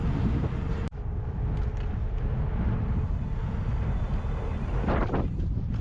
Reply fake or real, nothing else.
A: real